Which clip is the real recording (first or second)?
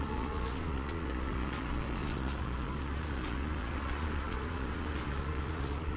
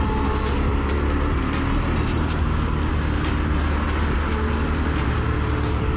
second